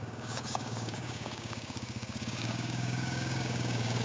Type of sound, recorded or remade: remade